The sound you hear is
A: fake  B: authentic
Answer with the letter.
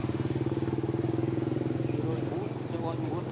B